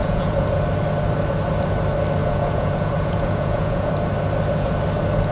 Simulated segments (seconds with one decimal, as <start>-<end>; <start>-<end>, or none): 0.0-0.6; 2.2-3.9